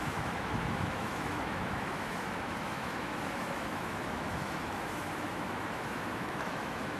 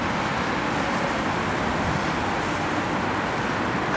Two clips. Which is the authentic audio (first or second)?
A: second